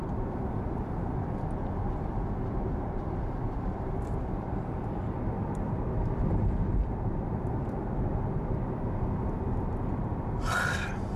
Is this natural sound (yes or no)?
no